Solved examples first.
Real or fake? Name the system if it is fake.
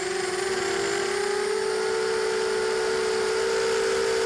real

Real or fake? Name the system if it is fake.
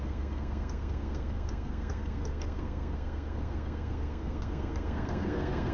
fake, codec, SNAC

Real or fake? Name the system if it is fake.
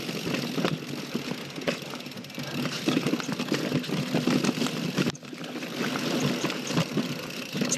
real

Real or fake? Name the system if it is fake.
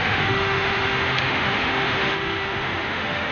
fake, autoencoder, DAC-VAE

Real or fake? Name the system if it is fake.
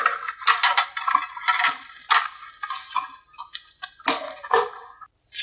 real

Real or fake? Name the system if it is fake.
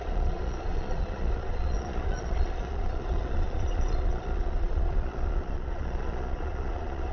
fake, vocoder, Vocos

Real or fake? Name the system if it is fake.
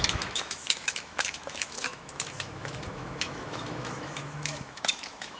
fake, autoencoder, DAC-VAE